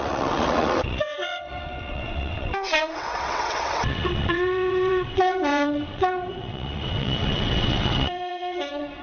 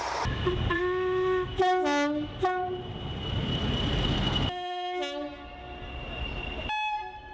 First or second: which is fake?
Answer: first